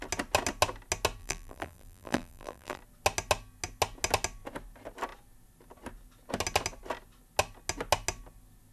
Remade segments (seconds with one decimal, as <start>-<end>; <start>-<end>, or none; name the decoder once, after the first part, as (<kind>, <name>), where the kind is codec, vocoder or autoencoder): 1.2-2.8 (vocoder, BigVGAN v2)